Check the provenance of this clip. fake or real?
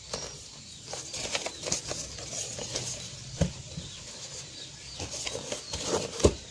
real